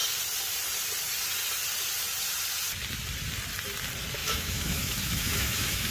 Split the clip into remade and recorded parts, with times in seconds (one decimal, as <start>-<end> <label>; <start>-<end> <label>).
0.0-4.2 recorded; 4.2-5.9 remade